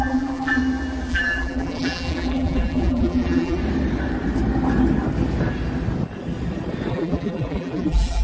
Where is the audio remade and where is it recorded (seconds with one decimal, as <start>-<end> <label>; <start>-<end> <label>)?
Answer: 0.0-0.6 remade; 0.6-1.1 recorded; 1.1-3.6 remade; 3.6-6.9 recorded; 6.9-8.2 remade